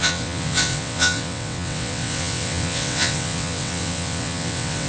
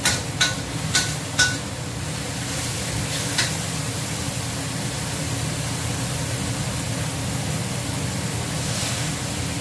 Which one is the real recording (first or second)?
second